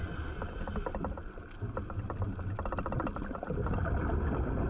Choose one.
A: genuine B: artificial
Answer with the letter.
A